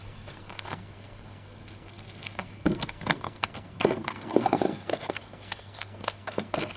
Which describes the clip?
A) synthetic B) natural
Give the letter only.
A